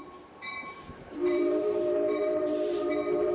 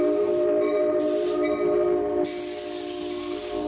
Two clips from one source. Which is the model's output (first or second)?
first